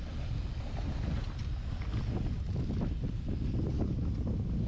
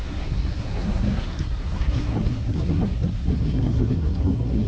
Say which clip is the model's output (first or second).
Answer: second